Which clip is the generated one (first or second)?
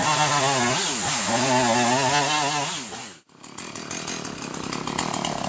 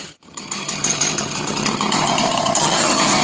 second